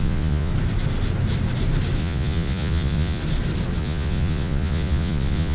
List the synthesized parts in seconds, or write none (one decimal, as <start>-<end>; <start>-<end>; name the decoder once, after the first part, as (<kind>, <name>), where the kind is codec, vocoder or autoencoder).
0.0-0.5 (vocoder, Vocos); 2.0-3.2; 3.8-5.5